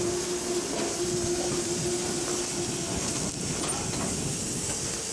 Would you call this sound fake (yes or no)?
no